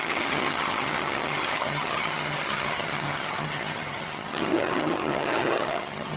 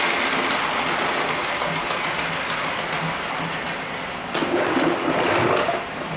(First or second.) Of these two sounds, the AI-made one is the first